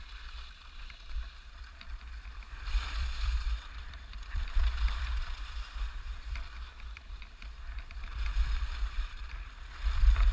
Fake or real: fake